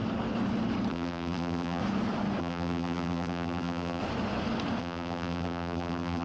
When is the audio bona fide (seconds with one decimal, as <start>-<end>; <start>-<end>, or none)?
0.0-0.9; 1.8-2.4; 4.0-4.8